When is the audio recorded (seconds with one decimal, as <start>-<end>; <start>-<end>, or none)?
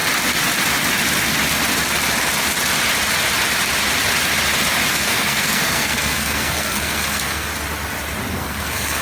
0.0-4.9; 7.5-8.3